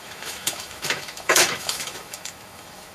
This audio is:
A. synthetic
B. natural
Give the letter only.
A